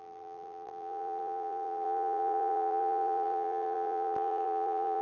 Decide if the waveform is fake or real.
fake